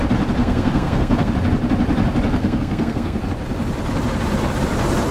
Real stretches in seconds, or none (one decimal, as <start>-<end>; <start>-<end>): 0.0-0.4; 1.3-2.4; 3.2-5.1